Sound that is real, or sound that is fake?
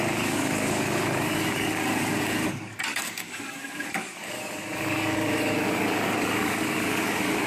fake